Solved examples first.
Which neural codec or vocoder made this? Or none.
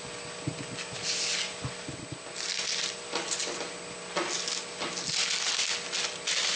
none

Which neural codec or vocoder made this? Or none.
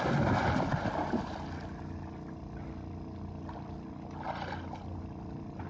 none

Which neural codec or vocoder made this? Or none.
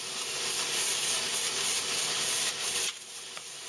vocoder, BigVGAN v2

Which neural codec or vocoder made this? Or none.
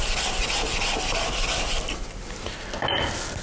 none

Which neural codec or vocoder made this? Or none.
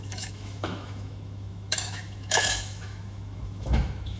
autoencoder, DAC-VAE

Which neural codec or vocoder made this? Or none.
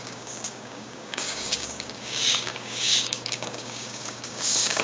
codec, DAC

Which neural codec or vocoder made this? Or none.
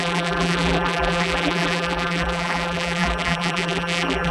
vocoder, BigVGAN v2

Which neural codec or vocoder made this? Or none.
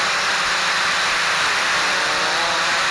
none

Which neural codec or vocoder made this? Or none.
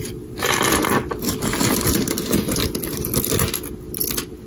none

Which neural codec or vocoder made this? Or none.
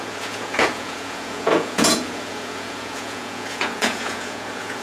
vocoder, Vocos